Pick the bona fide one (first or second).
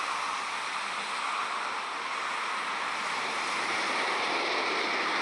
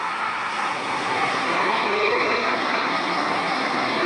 first